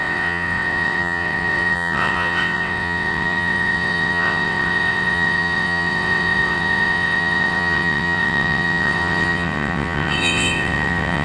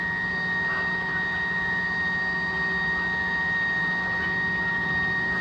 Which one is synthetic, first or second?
first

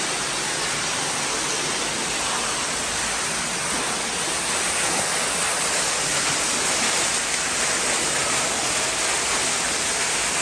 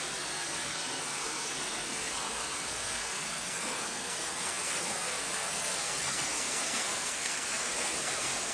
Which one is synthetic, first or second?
second